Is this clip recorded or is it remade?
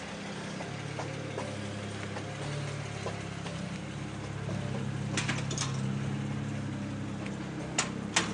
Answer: recorded